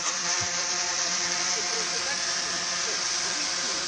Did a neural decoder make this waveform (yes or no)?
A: yes